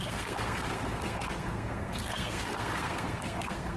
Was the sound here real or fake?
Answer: fake